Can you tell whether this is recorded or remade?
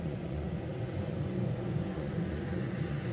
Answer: remade